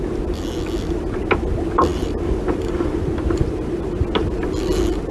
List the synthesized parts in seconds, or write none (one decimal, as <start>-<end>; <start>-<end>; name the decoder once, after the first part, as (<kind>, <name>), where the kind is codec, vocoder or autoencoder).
1.9-4.0 (vocoder, BigVGAN v2)